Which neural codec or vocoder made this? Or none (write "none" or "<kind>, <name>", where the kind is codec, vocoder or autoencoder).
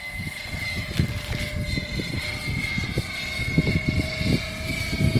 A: none